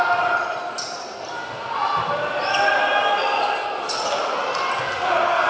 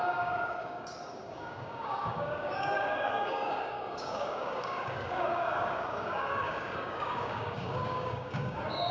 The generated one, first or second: second